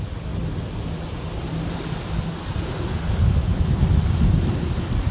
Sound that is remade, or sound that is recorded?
recorded